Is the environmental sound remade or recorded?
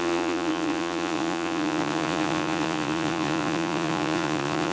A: remade